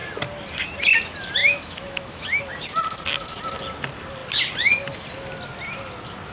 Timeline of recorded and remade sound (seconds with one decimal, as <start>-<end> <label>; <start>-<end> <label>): 0.0-1.4 recorded; 1.4-2.4 remade; 2.4-6.3 recorded